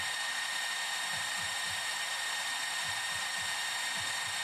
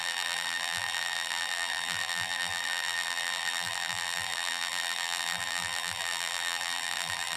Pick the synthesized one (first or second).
second